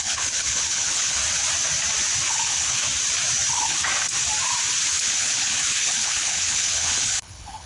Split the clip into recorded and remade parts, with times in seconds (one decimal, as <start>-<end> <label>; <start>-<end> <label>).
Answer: 0.0-1.2 remade; 1.2-2.3 recorded; 2.3-2.8 remade; 2.8-3.5 recorded; 3.5-3.9 remade; 3.9-4.9 recorded; 4.9-7.7 remade